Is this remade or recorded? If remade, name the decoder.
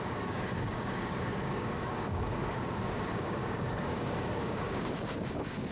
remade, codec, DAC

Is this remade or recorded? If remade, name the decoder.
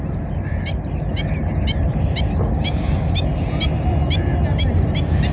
recorded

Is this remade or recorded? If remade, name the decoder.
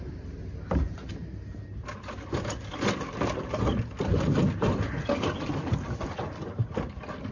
recorded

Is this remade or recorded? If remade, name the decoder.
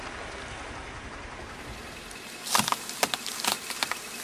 recorded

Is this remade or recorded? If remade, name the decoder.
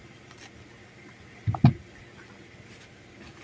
recorded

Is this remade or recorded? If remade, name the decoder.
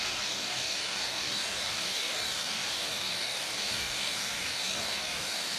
remade, codec, DAC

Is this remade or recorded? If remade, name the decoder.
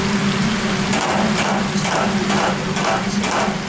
recorded